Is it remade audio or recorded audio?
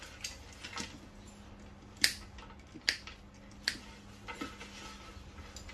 recorded